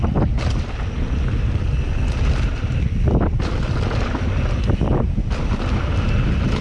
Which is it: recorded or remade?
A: recorded